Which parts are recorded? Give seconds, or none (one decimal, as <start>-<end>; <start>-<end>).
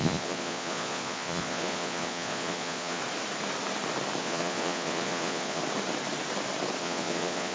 3.0-4.2; 5.6-6.8